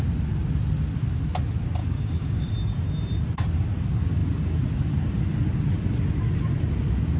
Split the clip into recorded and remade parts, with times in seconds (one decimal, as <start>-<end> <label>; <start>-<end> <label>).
0.0-1.8 recorded; 1.8-2.5 remade; 2.5-7.2 recorded